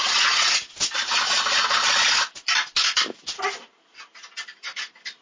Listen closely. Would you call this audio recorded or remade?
recorded